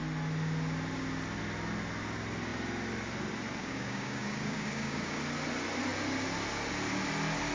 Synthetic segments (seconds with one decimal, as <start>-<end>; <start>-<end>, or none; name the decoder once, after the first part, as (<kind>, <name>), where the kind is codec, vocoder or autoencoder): 3.6-5.2 (codec, DAC)